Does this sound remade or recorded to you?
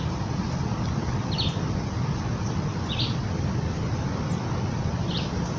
recorded